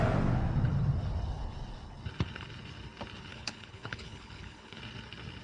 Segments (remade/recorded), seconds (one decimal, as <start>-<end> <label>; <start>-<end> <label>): 0.0-3.3 recorded; 3.3-4.8 remade; 4.8-5.4 recorded